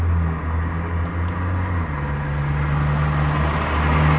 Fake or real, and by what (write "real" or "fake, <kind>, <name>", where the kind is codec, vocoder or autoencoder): real